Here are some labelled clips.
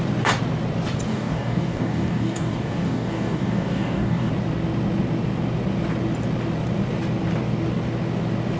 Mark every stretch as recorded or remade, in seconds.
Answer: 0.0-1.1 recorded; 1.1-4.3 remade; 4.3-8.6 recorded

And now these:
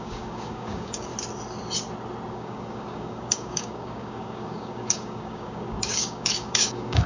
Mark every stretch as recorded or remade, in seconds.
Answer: 0.0-1.1 remade; 1.1-2.3 recorded; 2.3-7.1 remade